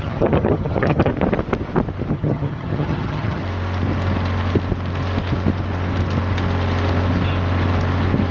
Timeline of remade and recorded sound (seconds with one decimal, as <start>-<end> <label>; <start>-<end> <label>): 0.0-1.1 remade; 1.1-2.1 recorded; 2.1-3.4 remade; 3.4-8.3 recorded